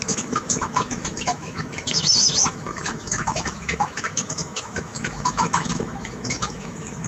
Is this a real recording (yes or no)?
no